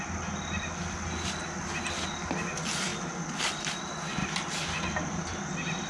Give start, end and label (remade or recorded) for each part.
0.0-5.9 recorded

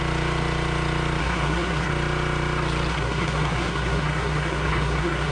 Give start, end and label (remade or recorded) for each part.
0.0-1.2 recorded; 1.2-1.9 remade; 1.9-2.9 recorded; 2.9-5.3 remade

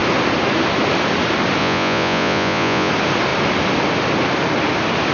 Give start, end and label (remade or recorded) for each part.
0.0-1.6 recorded; 1.6-2.9 remade; 2.9-5.1 recorded

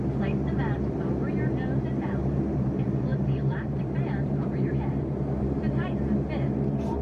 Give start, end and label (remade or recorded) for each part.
0.0-3.1 recorded; 3.1-5.7 remade; 5.7-7.0 recorded

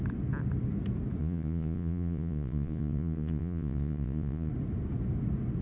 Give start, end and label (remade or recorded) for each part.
0.0-1.2 recorded; 1.2-4.5 remade; 4.5-5.6 recorded

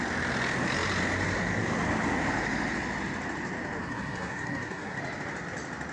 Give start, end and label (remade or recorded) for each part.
0.0-3.8 recorded; 3.8-5.0 remade; 5.0-5.9 recorded

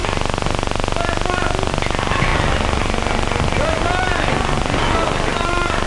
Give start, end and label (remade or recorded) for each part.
0.0-5.9 recorded